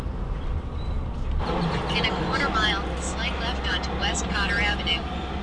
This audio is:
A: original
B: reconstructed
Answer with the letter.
A